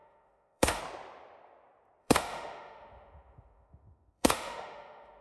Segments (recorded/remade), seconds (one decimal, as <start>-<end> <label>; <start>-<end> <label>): 0.0-0.8 remade; 0.8-2.0 recorded; 2.0-5.2 remade